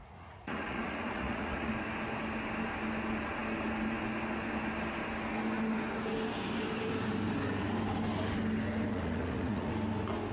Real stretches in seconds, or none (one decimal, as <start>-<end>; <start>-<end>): 1.7-8.9; 9.7-10.3